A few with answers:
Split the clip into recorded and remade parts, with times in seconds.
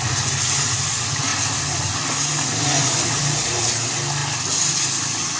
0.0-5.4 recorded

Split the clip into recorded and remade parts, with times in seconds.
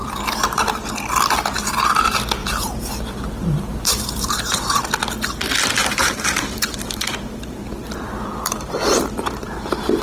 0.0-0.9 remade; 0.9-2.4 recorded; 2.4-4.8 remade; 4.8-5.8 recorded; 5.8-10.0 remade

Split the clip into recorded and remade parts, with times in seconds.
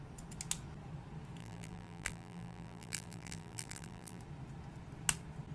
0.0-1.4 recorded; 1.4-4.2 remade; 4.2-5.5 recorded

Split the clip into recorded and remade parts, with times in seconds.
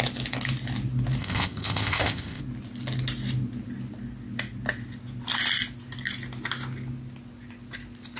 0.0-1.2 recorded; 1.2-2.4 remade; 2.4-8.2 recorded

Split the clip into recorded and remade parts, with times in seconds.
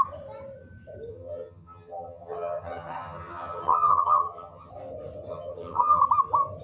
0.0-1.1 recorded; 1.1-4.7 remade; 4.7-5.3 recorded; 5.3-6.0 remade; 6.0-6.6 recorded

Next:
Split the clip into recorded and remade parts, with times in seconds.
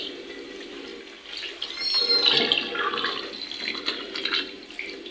0.0-0.9 remade; 0.9-4.0 recorded; 4.0-5.1 remade